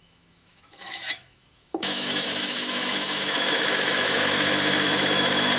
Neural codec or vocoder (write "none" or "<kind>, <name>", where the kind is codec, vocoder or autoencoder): autoencoder, DAC-VAE